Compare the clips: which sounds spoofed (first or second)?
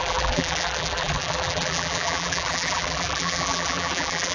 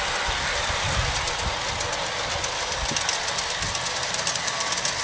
first